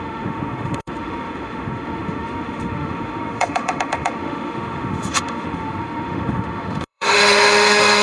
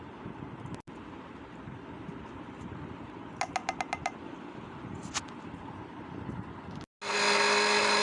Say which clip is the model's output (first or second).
first